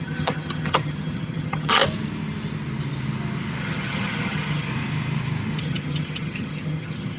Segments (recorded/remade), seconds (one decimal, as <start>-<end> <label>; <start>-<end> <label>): 0.0-1.8 remade; 1.8-3.6 recorded; 3.6-4.7 remade; 4.7-5.6 recorded; 5.6-7.2 remade